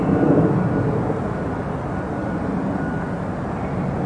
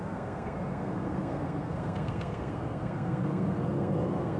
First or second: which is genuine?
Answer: first